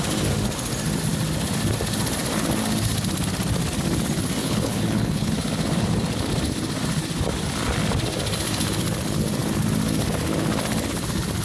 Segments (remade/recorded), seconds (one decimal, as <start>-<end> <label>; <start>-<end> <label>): 0.0-4.4 recorded; 4.4-5.3 remade; 5.3-11.4 recorded